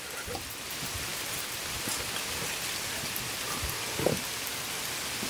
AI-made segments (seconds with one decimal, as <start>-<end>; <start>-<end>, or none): none